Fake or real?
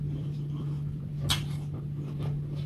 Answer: real